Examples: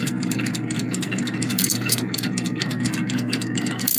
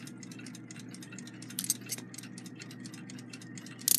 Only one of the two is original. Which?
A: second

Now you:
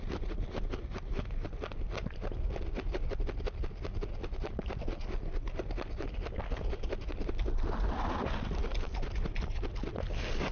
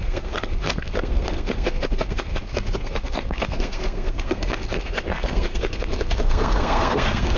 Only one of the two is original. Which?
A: first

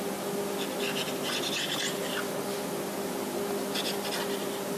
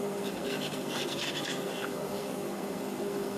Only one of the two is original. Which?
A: first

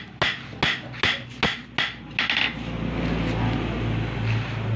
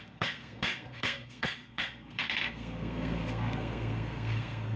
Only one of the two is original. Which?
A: first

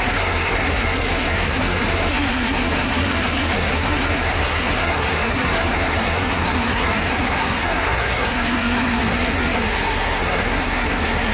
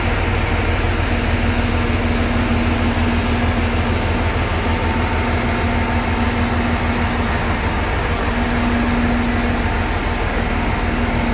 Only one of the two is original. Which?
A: second